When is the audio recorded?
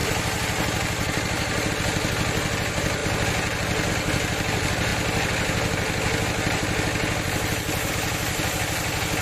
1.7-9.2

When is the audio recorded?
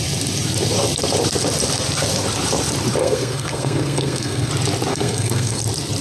0.0-3.0; 4.5-4.9; 5.6-6.0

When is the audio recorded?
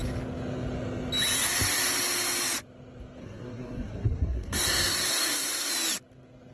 0.0-3.2; 5.7-6.5